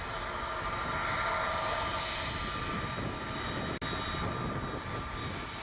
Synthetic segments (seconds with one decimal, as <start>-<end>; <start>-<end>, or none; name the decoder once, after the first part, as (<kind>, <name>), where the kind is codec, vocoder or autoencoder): none